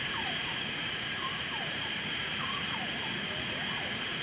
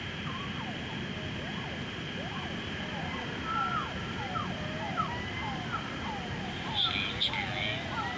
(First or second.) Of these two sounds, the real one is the second